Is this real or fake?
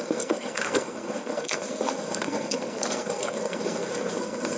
fake